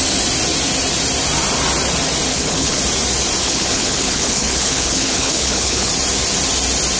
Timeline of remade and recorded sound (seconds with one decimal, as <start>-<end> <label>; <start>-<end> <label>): 0.0-2.3 recorded; 2.3-2.8 remade; 2.8-3.4 recorded; 3.4-5.9 remade; 5.9-7.0 recorded